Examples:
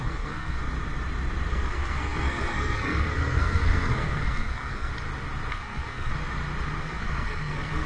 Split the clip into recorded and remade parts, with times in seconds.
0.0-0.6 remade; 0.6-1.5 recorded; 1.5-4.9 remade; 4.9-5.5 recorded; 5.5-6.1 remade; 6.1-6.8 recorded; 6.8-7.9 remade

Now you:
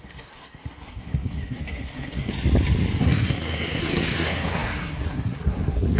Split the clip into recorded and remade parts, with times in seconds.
0.0-2.3 remade; 2.3-3.0 recorded; 3.0-6.0 remade

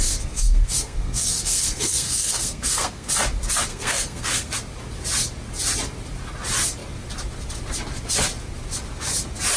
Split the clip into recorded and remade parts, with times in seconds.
0.0-3.1 remade; 3.1-3.7 recorded; 3.7-4.5 remade; 4.5-9.6 recorded

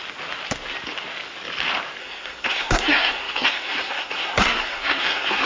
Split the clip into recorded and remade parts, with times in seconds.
0.0-2.0 recorded; 2.0-5.5 remade

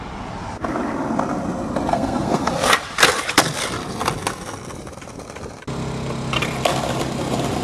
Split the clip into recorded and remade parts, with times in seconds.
0.0-1.9 recorded; 1.9-2.5 remade; 2.5-7.6 recorded

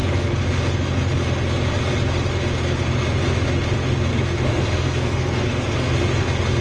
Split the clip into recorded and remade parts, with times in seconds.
0.0-4.1 recorded; 4.1-5.9 remade; 5.9-6.6 recorded

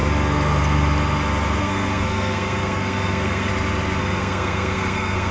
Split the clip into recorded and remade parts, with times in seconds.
0.0-1.6 recorded; 1.6-3.5 remade; 3.5-4.0 recorded; 4.0-5.3 remade

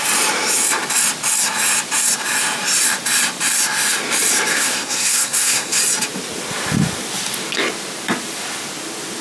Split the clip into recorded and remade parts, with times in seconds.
0.0-4.5 recorded; 4.5-5.8 remade; 5.8-9.2 recorded